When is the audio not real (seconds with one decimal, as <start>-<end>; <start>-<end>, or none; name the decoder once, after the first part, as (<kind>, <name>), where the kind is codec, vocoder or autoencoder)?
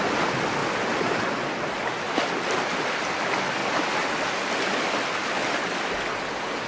0.6-2.0 (vocoder, BigVGAN v2); 5.4-6.0